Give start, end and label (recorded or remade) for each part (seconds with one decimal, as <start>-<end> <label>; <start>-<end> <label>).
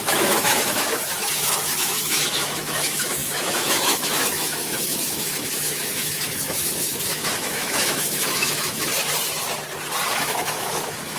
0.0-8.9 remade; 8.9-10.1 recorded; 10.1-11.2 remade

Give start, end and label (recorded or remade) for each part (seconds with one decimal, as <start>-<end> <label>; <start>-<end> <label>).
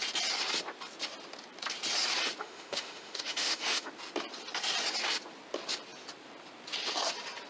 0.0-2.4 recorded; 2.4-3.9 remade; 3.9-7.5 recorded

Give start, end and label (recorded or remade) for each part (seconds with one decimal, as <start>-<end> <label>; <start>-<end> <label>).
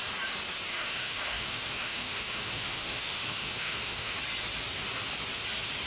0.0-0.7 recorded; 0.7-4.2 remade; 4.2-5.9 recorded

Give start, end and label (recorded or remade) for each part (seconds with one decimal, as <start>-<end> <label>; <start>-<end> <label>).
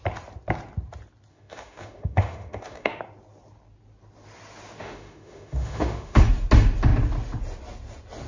0.0-1.3 recorded; 1.3-3.0 remade; 3.0-4.8 recorded; 4.8-6.2 remade; 6.2-8.3 recorded